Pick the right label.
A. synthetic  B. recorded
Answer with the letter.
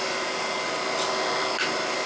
B